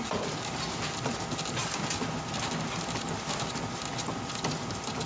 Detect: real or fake real